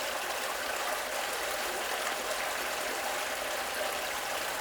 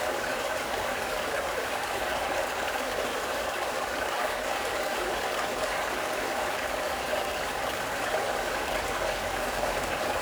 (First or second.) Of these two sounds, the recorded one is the first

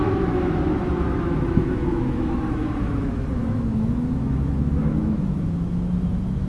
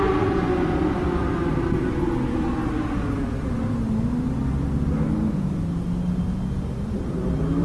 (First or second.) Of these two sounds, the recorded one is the second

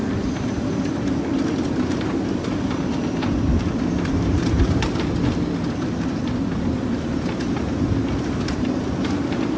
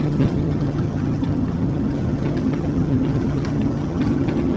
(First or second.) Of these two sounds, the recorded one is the first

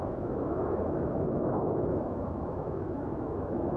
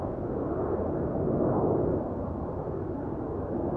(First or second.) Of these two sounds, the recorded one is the second